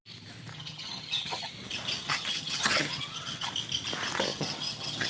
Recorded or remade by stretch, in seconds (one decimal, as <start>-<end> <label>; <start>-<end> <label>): 0.0-0.5 recorded; 0.5-1.5 remade; 1.5-2.0 recorded; 2.0-3.5 remade; 3.5-4.3 recorded; 4.3-5.1 remade